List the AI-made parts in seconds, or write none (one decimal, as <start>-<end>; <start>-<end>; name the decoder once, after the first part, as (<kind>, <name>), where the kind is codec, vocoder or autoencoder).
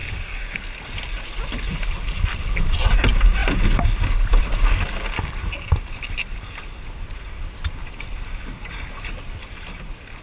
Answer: 0.0-0.6 (codec, DAC)